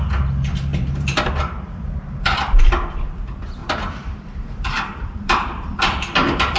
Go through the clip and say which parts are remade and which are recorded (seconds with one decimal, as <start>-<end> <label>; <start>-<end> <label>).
0.0-0.7 recorded; 0.7-1.4 remade; 1.4-3.6 recorded; 3.6-6.6 remade